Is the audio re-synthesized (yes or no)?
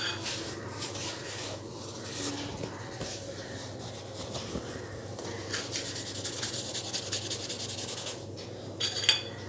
no